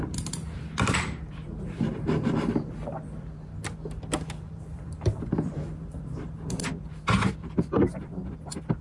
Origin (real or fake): fake